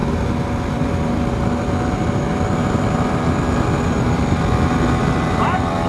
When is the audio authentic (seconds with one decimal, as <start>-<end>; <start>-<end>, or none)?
0.0-5.9